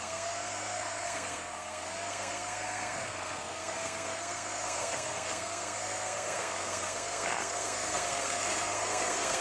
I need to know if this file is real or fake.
fake